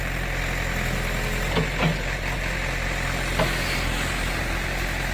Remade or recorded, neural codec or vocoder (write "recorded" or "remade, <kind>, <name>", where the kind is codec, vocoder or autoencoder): recorded